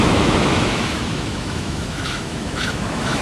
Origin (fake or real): fake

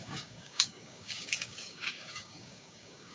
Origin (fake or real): fake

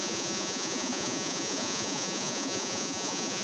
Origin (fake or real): fake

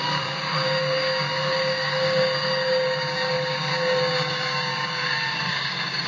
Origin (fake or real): fake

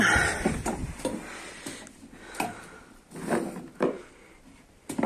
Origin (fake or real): real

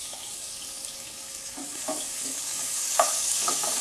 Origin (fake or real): fake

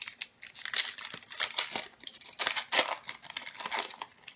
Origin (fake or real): real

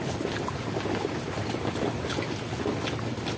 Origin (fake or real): real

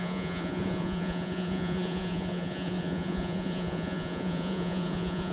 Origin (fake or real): fake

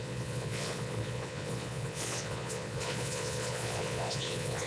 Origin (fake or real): fake